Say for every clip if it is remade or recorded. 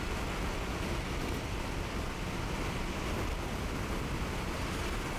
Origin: recorded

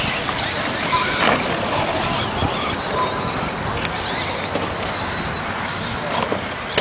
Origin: recorded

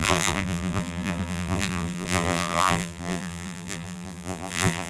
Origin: remade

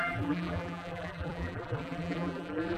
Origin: remade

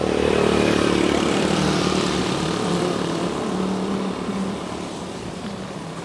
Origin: remade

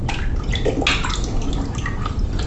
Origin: recorded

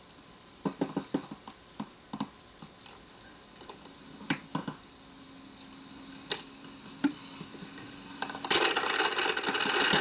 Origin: recorded